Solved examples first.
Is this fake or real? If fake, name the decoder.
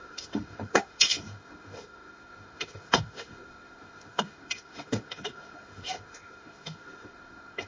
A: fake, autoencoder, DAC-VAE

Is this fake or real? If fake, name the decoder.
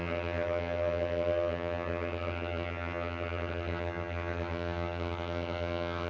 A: fake, vocoder, HiFi-GAN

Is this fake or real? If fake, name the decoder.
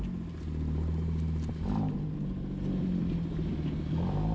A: real